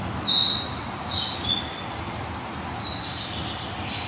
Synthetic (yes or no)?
no